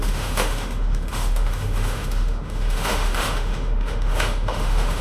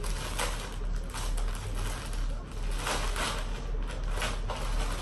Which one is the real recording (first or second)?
second